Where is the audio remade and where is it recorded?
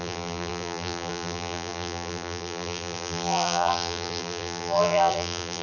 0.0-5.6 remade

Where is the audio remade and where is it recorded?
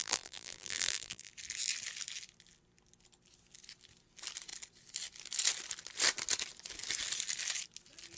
0.0-1.3 remade; 1.3-8.2 recorded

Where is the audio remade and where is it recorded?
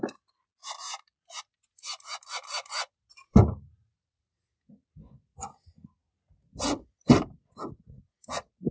0.0-8.7 recorded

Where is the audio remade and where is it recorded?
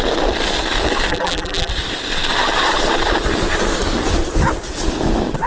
0.0-1.1 recorded; 1.1-1.7 remade; 1.7-5.5 recorded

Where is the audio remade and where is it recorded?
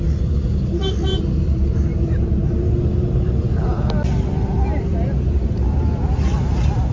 0.0-1.1 recorded; 1.1-2.7 remade; 2.7-6.9 recorded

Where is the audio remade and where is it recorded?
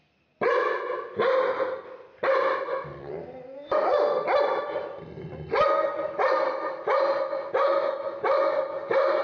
0.0-0.6 recorded; 0.6-2.6 remade; 2.6-9.2 recorded